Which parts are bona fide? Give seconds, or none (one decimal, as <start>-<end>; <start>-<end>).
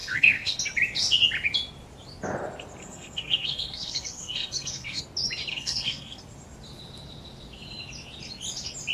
0.6-2.8; 5.0-5.5; 6.2-8.9